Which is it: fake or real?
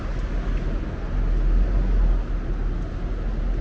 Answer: real